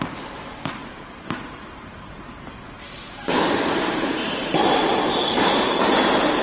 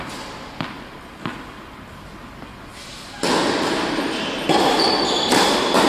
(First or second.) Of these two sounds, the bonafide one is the second